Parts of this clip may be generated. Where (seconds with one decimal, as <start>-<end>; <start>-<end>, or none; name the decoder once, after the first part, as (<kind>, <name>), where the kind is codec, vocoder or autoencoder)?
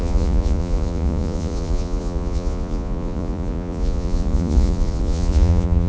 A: 0.0-5.9 (vocoder, Vocos)